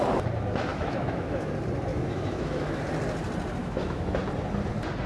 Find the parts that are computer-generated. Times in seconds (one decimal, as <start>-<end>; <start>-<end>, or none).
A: 0.7-1.5; 1.9-2.8; 3.6-4.2